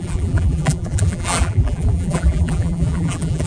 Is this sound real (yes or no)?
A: no